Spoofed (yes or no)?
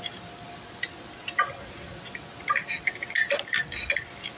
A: no